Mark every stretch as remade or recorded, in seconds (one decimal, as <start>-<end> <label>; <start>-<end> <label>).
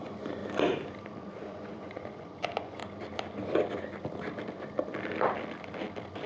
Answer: 0.0-0.4 remade; 0.4-1.4 recorded; 1.4-2.8 remade; 2.8-6.3 recorded